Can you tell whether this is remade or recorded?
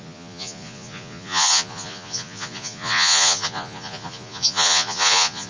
remade